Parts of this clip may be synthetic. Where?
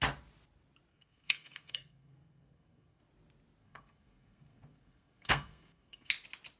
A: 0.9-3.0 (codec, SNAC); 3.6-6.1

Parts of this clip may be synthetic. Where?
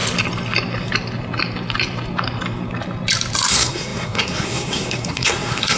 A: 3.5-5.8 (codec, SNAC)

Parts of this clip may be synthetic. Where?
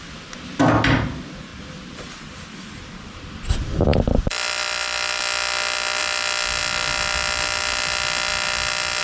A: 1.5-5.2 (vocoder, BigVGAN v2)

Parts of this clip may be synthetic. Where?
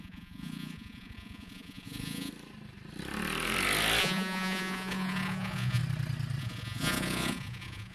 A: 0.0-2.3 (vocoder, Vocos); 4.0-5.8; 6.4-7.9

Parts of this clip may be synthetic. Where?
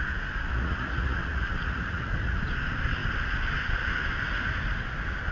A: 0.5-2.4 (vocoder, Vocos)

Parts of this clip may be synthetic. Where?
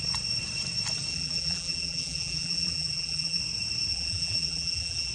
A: 1.1-3.4 (vocoder, BigVGAN v2); 3.9-5.1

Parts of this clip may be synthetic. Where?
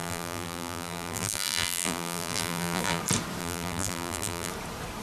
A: 0.0-3.0 (vocoder, BigVGAN v2); 3.4-4.5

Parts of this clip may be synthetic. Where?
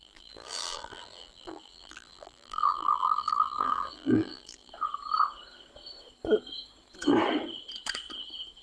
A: 0.0-4.7 (vocoder, BigVGAN v2)